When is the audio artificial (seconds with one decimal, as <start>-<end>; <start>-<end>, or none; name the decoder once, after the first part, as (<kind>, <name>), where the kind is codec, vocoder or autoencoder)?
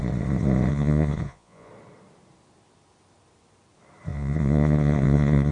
0.7-1.7 (vocoder, Vocos); 4.1-5.5